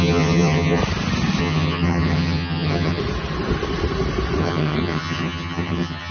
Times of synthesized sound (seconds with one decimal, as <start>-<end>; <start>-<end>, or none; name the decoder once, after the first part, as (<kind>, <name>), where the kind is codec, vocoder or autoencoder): 0.0-0.8 (vocoder, HiFi-GAN); 1.4-3.0; 4.4-6.1